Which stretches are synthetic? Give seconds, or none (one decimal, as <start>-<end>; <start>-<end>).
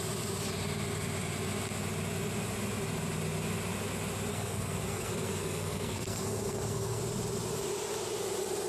4.3-7.0